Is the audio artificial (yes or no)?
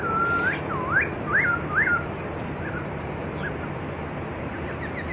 no